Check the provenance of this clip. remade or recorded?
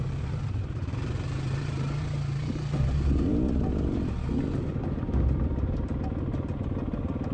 recorded